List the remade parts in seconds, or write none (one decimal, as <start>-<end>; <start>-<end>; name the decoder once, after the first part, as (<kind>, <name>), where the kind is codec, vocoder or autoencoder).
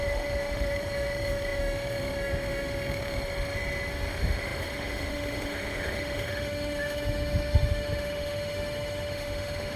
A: 0.0-3.2 (autoencoder, DAC-VAE); 4.1-9.8